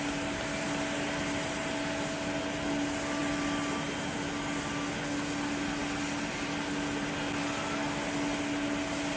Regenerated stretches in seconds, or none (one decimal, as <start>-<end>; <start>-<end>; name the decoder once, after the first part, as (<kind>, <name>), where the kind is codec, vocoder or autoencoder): none